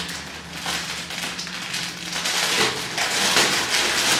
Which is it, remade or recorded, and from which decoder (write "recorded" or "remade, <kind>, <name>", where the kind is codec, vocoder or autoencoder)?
recorded